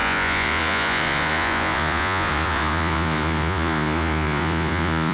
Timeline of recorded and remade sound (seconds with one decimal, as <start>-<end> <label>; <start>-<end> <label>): 0.0-5.1 remade